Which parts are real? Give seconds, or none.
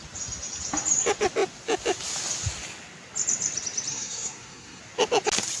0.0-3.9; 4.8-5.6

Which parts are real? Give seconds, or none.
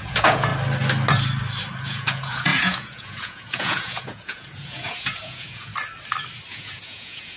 0.5-1.8; 5.7-6.5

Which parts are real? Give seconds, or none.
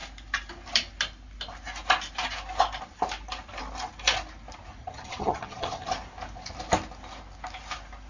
0.0-4.8; 5.9-8.1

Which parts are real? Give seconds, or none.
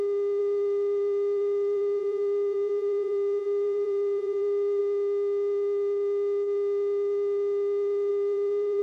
0.0-0.4; 4.8-8.1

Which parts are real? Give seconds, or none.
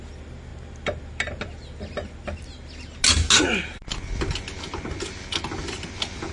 0.0-6.3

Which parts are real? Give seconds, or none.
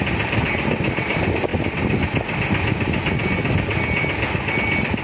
0.0-5.0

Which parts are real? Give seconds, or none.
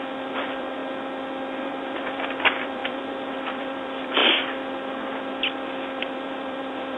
0.8-1.6; 4.2-6.0